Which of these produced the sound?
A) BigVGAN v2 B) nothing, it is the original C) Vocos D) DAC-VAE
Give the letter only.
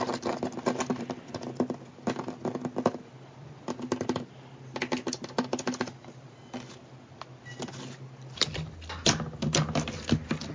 B